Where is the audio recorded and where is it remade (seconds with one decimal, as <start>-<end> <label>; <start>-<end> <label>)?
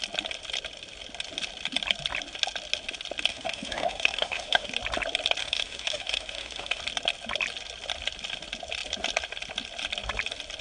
0.0-3.3 recorded; 3.3-4.7 remade; 4.7-5.4 recorded; 5.4-6.8 remade; 6.8-10.6 recorded